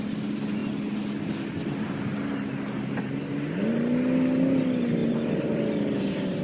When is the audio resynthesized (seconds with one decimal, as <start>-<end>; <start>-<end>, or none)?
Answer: 5.0-5.6